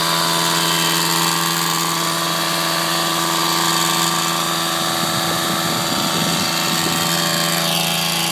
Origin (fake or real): real